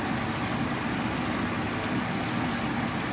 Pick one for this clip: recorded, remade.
recorded